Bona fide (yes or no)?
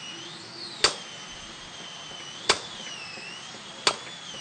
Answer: yes